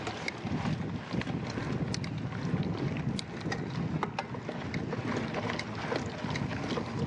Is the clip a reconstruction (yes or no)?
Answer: no